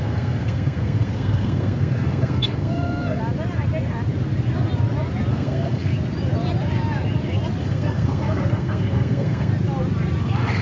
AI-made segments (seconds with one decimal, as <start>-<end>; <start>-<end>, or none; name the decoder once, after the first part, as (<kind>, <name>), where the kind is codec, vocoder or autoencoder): 0.0-3.2 (codec, SNAC); 5.3-5.9; 7.6-9.5; 10.2-10.6